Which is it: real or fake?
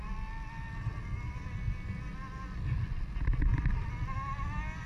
real